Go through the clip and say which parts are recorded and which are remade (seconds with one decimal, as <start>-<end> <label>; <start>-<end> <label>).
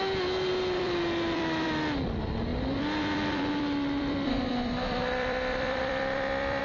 0.0-0.5 recorded; 0.5-1.7 remade; 1.7-2.5 recorded; 2.5-6.6 remade